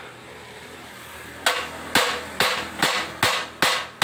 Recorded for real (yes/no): yes